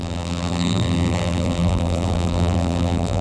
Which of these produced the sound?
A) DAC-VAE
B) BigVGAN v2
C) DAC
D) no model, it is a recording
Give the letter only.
B